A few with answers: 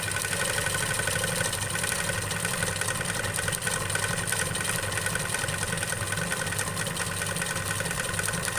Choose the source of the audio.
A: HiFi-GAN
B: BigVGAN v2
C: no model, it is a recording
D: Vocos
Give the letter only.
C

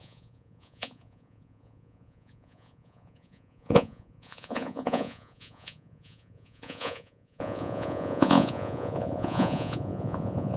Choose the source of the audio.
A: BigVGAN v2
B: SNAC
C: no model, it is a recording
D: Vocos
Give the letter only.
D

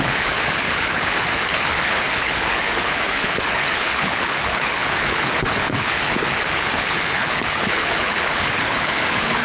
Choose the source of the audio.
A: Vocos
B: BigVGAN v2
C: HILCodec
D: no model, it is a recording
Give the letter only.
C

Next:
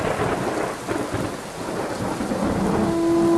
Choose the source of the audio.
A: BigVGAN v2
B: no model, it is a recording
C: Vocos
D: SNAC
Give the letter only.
B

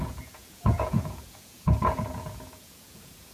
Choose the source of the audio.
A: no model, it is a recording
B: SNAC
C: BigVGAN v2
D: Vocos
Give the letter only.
D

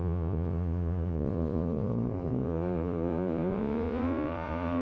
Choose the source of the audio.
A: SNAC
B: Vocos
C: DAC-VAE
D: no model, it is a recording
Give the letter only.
B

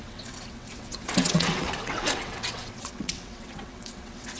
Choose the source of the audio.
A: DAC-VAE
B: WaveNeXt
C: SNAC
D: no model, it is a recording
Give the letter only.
B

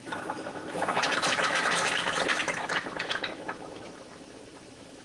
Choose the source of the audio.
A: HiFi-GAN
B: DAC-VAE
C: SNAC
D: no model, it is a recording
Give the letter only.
B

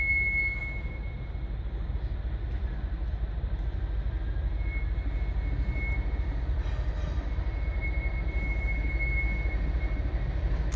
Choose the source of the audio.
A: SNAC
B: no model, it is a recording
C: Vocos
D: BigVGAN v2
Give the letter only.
B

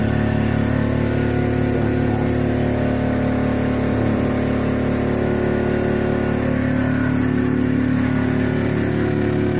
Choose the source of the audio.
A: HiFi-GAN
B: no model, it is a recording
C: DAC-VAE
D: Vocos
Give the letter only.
B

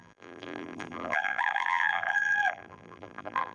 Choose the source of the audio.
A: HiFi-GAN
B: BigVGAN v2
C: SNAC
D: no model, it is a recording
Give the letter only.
B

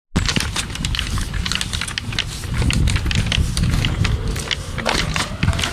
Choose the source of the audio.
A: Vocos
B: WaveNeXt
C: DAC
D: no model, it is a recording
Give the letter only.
D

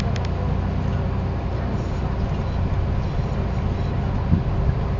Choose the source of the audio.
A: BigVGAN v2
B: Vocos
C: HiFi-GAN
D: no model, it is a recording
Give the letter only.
D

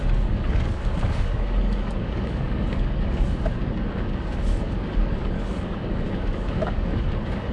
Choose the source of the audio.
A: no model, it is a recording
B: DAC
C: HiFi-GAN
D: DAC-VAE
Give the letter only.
B